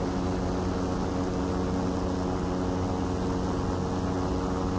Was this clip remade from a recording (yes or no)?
no